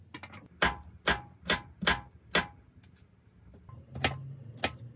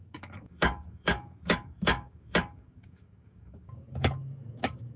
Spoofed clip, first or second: second